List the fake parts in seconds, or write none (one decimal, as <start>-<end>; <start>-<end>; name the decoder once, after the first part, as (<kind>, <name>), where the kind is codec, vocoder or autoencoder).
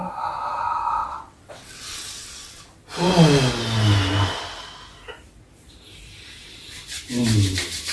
1.0-2.6 (vocoder, WaveNeXt)